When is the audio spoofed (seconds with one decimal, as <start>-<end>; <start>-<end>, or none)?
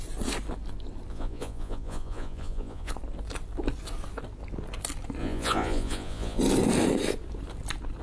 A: 1.1-2.9; 5.2-6.4